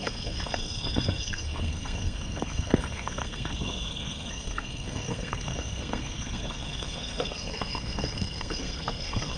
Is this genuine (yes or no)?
no